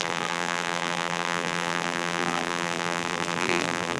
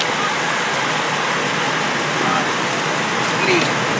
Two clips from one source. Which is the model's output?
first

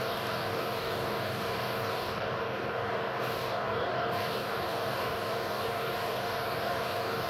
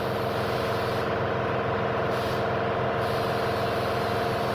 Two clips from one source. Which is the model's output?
first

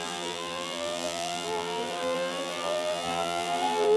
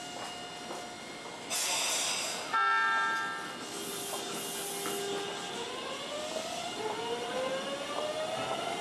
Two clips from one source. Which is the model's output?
first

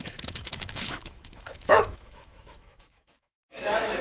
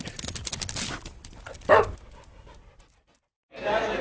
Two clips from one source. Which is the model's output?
first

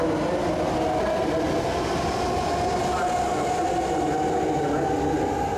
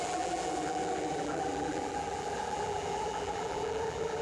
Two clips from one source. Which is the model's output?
second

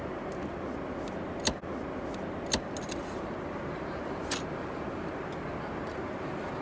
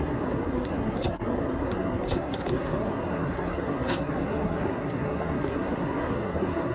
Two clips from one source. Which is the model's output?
second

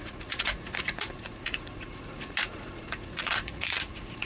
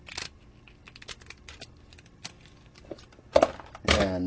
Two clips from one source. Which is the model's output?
first